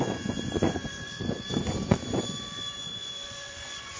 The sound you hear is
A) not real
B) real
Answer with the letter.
A